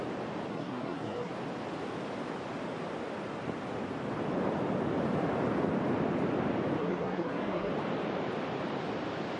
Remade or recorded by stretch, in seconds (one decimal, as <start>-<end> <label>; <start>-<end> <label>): 0.0-0.5 recorded; 0.5-1.3 remade; 1.3-6.8 recorded; 6.8-7.7 remade; 7.7-9.4 recorded